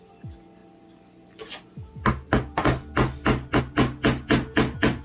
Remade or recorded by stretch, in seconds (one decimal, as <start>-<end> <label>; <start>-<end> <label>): 0.0-5.0 recorded